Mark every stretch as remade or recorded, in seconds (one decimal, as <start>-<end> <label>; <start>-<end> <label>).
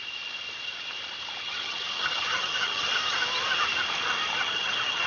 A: 0.0-1.4 recorded; 1.4-2.9 remade; 2.9-4.4 recorded; 4.4-5.1 remade